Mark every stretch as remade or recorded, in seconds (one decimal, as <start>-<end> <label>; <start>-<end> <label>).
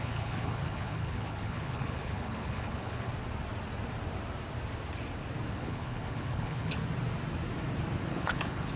0.0-3.1 remade; 3.1-5.5 recorded; 5.5-6.8 remade; 6.8-8.1 recorded; 8.1-8.8 remade